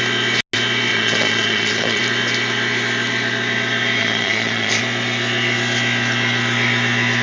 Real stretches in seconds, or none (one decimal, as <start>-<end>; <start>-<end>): 0.0-0.9; 2.0-4.0; 4.8-7.2